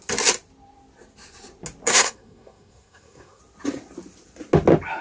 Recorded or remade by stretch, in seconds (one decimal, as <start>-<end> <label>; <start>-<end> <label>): 0.0-1.9 recorded; 1.9-3.4 remade; 3.4-5.0 recorded